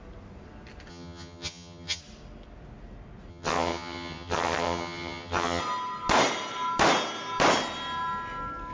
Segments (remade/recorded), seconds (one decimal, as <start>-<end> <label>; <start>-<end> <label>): 0.0-0.9 recorded; 0.9-2.0 remade; 2.0-3.3 recorded; 3.3-5.6 remade; 5.6-8.7 recorded